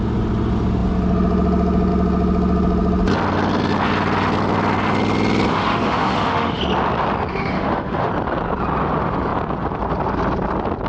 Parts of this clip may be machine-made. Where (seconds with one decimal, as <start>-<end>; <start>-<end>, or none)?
5.5-6.6; 7.3-8.1